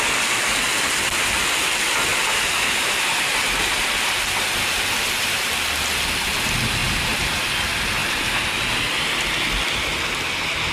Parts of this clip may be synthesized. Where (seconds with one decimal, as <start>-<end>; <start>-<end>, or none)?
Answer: 2.1-5.5; 6.8-7.4; 8.0-9.1

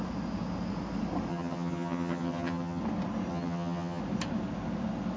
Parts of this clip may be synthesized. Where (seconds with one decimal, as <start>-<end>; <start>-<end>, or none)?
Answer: 1.3-2.8; 3.3-4.0

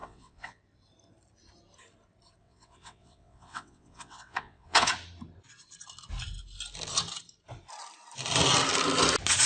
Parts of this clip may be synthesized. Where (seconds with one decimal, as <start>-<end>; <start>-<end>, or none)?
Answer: 0.0-0.6; 2.4-4.9

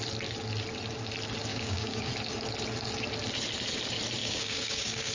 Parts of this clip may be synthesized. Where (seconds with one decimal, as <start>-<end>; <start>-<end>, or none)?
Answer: 1.5-2.1; 4.2-5.1

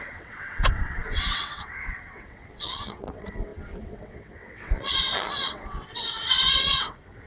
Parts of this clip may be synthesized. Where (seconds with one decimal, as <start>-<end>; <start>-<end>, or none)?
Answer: 0.0-7.3